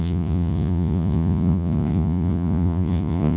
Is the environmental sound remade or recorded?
remade